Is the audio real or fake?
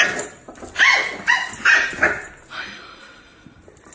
real